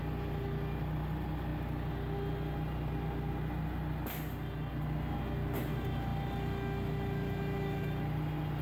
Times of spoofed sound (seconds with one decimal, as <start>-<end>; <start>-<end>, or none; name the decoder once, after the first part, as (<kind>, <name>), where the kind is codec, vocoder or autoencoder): none